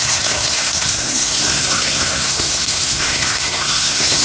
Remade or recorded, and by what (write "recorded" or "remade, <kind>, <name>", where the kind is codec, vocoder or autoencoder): remade, codec, SNAC